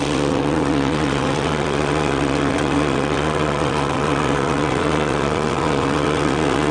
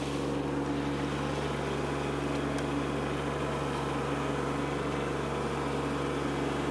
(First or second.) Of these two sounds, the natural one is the second